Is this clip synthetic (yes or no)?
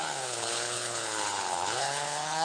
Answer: yes